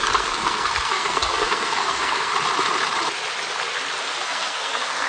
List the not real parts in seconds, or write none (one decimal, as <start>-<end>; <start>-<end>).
0.0-2.3; 4.0-5.1